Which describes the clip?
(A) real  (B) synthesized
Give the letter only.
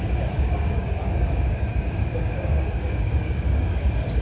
B